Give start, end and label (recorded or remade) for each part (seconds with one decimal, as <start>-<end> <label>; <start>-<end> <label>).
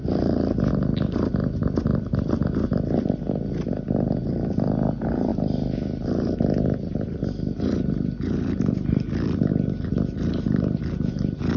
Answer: 0.0-0.7 remade; 0.7-1.9 recorded; 1.9-3.1 remade; 3.1-5.3 recorded; 5.3-9.5 remade; 9.5-11.6 recorded